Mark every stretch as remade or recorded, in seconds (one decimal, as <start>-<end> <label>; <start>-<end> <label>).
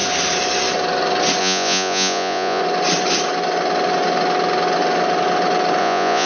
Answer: 0.0-1.4 recorded; 1.4-2.6 remade; 2.6-5.8 recorded; 5.8-6.3 remade